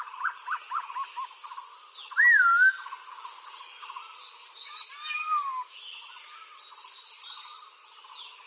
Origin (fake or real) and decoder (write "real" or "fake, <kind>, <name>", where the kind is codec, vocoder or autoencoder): real